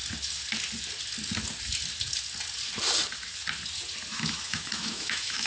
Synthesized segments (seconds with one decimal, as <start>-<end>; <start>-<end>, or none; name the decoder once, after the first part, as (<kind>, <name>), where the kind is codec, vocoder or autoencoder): 4.1-5.5 (autoencoder, DAC-VAE)